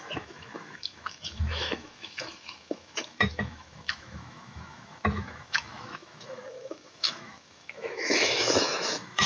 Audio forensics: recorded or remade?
remade